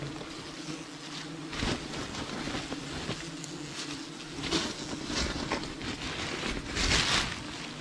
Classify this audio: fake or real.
real